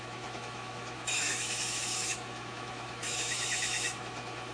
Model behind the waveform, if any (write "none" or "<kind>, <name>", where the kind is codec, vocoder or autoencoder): autoencoder, DAC-VAE